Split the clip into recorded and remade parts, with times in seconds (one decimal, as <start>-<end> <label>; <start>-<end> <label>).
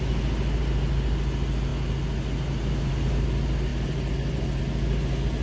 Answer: 0.0-5.4 recorded